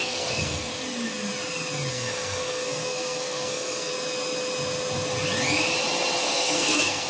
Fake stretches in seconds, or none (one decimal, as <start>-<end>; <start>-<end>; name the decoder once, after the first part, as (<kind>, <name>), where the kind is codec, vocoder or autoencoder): 0.0-0.7 (codec, SNAC); 1.9-3.9; 6.2-7.1